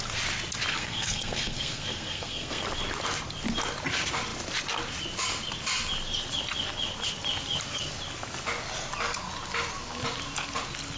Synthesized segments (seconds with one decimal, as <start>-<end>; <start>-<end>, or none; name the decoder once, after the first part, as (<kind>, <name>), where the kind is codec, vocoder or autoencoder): 0.7-2.6 (codec, SNAC)